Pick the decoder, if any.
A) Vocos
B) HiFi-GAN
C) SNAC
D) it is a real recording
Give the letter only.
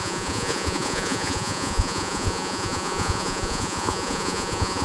A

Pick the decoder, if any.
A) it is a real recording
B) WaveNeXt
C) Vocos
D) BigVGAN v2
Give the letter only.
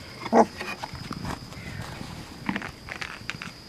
A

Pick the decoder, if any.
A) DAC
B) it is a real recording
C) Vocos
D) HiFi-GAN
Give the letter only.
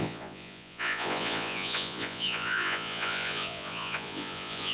C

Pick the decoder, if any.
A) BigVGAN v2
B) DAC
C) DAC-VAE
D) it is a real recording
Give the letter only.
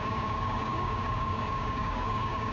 B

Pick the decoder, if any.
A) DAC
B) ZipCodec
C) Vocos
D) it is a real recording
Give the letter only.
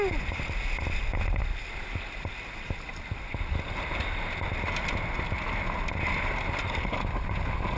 D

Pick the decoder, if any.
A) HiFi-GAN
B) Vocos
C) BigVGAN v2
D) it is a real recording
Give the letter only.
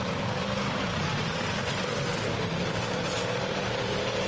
C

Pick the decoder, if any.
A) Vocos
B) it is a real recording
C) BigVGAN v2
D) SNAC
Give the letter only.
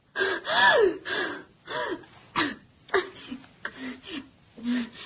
B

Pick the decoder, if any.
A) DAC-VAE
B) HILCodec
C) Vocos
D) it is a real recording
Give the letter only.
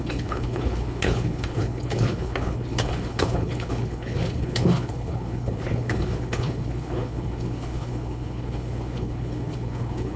B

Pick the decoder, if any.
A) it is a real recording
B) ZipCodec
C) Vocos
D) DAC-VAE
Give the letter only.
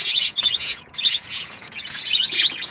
C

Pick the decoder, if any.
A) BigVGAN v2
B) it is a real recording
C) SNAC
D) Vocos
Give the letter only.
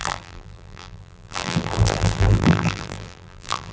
A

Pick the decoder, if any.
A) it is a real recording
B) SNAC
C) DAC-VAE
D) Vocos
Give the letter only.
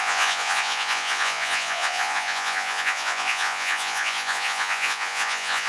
D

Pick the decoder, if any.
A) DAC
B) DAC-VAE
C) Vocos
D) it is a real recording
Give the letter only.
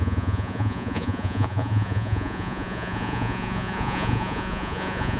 C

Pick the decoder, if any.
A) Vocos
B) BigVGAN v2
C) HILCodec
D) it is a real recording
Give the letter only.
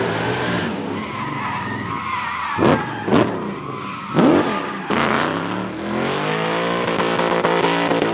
D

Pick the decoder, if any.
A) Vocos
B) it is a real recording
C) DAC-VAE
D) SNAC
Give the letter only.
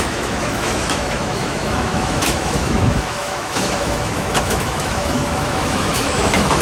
C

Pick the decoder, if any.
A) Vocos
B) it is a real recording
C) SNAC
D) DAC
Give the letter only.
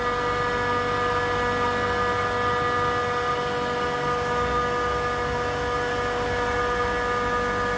B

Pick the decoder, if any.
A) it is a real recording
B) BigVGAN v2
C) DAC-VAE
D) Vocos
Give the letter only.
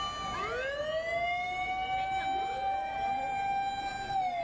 A